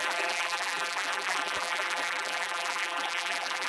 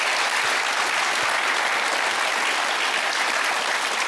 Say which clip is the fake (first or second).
first